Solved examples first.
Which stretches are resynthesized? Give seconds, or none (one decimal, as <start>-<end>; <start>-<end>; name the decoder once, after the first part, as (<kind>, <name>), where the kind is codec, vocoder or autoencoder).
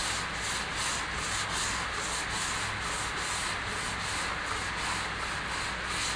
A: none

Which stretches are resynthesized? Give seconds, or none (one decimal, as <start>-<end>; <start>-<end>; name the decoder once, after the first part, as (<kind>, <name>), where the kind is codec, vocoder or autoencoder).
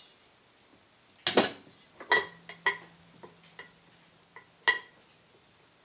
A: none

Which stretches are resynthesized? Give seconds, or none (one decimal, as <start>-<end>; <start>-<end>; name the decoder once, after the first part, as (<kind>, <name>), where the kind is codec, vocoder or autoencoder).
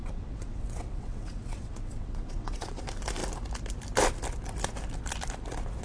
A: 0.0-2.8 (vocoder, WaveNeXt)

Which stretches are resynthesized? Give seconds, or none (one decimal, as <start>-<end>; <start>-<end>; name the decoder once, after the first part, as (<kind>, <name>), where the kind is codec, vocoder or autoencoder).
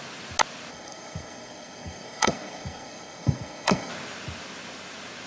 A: 0.7-3.9 (codec, SNAC)